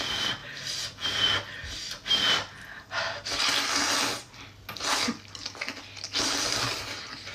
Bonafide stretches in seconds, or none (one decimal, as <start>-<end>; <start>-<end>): 0.0-7.3